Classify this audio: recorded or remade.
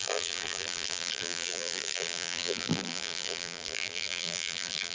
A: remade